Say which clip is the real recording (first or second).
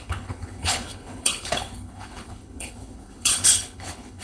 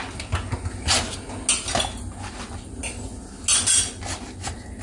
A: second